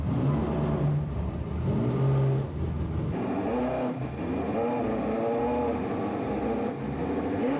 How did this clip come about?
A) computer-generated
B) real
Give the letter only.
B